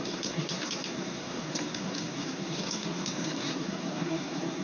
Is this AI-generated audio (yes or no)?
yes